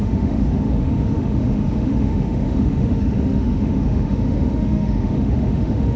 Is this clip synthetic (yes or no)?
yes